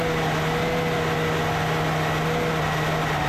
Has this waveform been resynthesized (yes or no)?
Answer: no